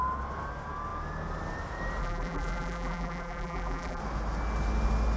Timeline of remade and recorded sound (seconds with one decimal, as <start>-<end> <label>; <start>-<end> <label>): 0.0-2.0 recorded; 2.0-4.0 remade; 4.0-5.2 recorded